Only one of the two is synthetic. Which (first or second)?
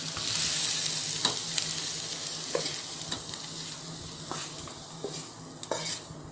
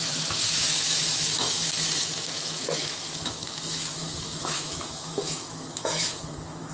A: second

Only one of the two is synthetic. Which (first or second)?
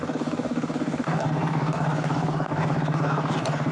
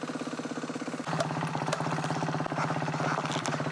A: first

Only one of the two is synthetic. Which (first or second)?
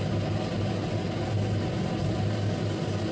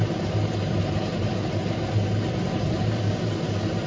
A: second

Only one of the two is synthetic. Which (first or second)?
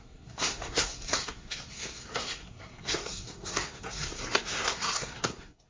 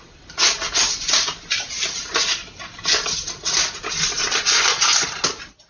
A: first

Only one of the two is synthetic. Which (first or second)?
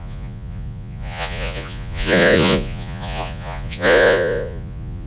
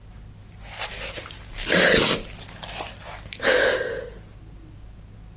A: first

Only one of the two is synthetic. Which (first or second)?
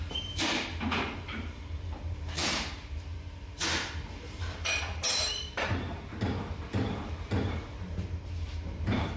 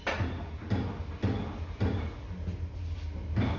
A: first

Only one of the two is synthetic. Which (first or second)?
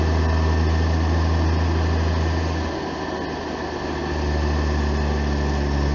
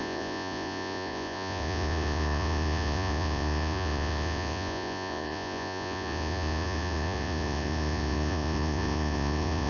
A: second